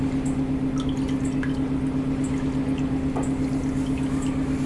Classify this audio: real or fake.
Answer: real